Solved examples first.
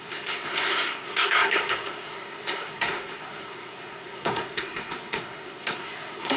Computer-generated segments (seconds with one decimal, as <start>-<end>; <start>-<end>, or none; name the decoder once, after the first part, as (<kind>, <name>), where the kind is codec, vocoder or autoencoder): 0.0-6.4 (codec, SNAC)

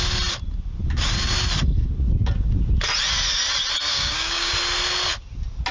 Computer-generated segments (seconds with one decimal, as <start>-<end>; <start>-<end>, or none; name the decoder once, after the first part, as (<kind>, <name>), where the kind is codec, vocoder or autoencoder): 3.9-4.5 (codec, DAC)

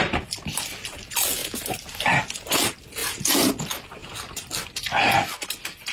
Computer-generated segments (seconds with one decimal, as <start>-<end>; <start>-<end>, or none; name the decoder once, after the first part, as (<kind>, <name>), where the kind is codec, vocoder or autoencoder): 1.4-2.0 (vocoder, BigVGAN v2); 3.0-3.5; 4.0-4.5